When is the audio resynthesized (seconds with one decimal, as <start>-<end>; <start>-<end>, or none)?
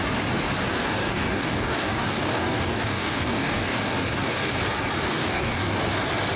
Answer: 0.7-4.5; 5.1-5.8